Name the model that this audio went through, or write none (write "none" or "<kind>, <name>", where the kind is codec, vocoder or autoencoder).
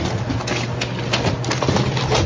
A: none